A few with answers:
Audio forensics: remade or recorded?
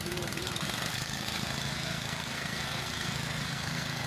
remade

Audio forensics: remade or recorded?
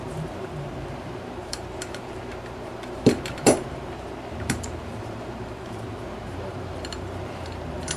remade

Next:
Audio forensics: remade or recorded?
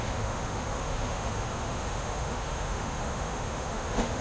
remade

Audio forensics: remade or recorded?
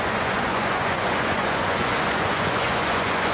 remade